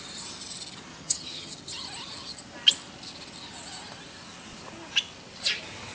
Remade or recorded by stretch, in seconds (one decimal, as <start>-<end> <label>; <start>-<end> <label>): 0.0-0.9 recorded; 0.9-1.5 remade; 1.5-5.9 recorded

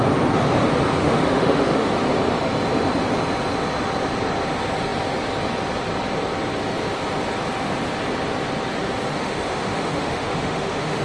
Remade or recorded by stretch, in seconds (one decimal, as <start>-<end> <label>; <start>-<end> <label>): 0.0-1.0 recorded; 1.0-1.9 remade; 1.9-9.1 recorded; 9.1-11.0 remade

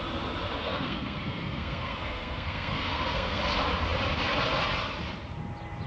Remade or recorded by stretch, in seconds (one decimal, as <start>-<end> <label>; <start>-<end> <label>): 0.0-0.6 recorded; 0.6-3.4 remade; 3.4-5.9 recorded

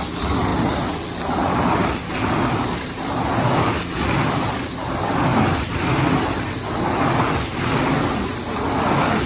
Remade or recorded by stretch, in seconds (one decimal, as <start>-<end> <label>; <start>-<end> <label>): 0.0-9.3 recorded

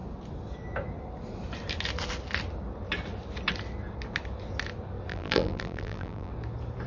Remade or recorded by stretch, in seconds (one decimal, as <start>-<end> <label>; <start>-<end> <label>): 0.0-5.1 recorded; 5.1-6.3 remade; 6.3-6.9 recorded

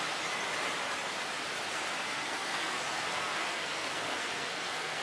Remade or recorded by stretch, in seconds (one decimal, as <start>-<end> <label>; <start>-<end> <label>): 0.0-1.7 recorded; 1.7-5.0 remade

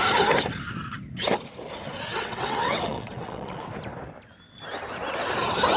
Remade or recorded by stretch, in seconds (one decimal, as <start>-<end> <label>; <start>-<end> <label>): 0.0-2.1 recorded; 2.1-3.7 remade; 3.7-5.8 recorded